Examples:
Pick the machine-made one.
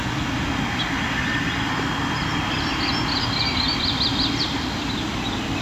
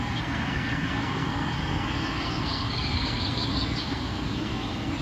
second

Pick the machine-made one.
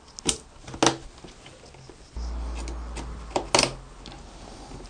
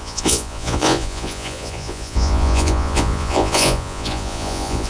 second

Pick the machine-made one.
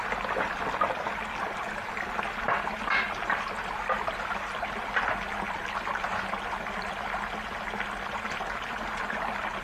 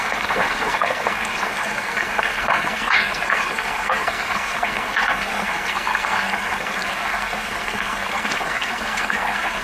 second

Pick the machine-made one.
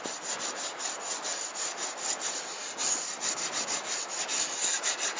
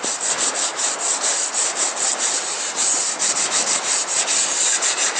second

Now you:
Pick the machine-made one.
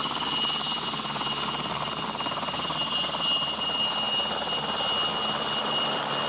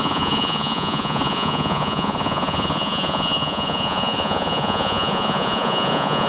second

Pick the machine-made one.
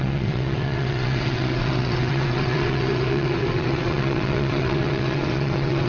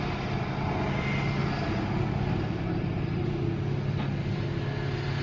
first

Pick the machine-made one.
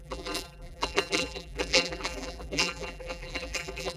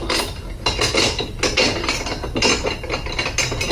first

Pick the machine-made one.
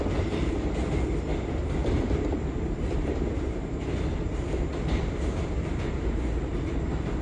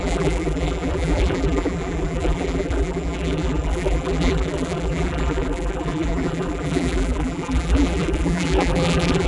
second